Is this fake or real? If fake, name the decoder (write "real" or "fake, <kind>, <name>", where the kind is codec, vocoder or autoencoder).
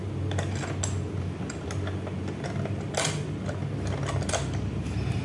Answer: real